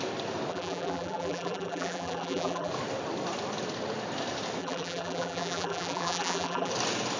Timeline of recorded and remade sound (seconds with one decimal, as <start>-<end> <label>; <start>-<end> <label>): 0.0-0.5 recorded; 0.5-2.7 remade; 2.7-4.6 recorded; 4.6-6.7 remade; 6.7-7.2 recorded